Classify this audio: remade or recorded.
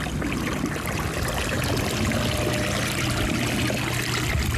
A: recorded